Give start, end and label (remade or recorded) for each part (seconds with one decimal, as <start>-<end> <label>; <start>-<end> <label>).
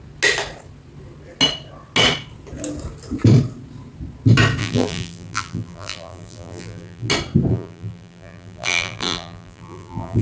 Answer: 0.0-4.6 recorded; 4.6-7.1 remade; 7.1-7.5 recorded; 7.5-10.2 remade